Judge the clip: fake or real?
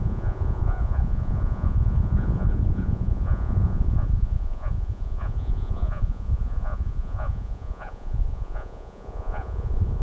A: fake